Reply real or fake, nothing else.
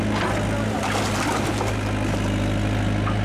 real